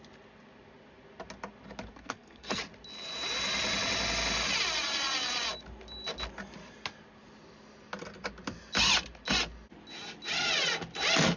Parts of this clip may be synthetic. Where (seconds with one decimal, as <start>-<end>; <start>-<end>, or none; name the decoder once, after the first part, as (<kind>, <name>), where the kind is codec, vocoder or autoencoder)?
1.9-2.6 (codec, SNAC)